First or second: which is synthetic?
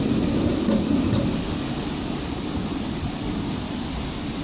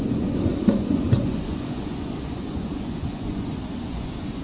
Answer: second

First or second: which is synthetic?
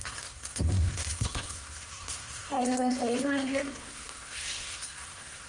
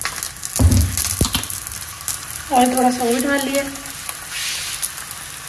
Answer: first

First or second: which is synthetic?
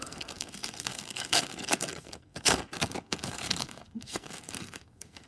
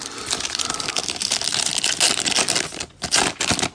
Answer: first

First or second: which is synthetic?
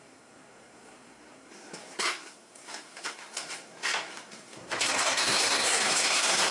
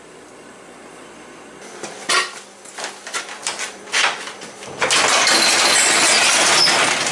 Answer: first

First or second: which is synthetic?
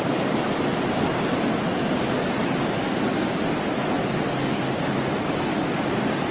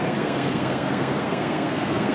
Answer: second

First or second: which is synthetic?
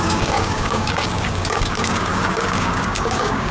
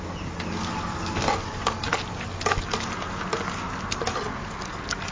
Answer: first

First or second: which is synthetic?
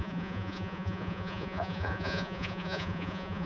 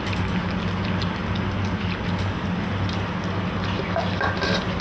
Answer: first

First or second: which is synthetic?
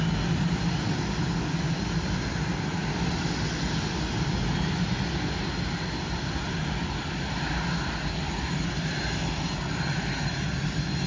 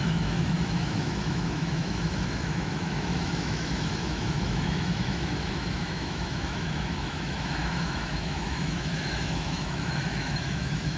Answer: second